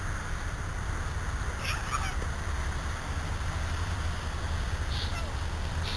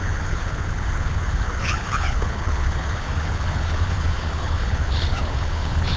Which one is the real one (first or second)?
first